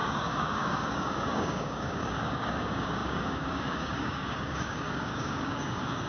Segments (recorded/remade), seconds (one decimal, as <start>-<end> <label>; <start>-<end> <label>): 0.0-6.1 remade